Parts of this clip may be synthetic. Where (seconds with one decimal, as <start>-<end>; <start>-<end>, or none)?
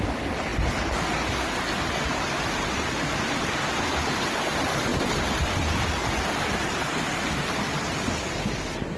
none